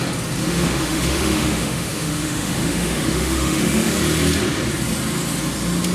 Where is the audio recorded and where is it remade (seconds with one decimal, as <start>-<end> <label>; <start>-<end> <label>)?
0.0-0.4 recorded; 0.4-3.9 remade; 3.9-5.9 recorded